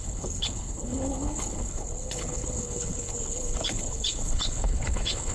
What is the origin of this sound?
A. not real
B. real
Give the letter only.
A